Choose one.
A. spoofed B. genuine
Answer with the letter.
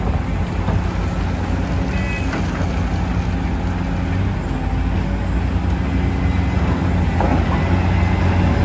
B